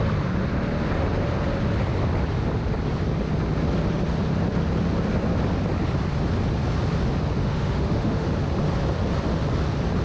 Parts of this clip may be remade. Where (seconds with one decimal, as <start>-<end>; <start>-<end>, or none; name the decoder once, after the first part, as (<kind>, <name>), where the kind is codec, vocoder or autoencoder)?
7.4-8.3 (autoencoder, DAC-VAE)